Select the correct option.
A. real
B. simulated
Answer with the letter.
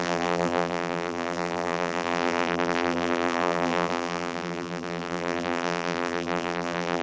B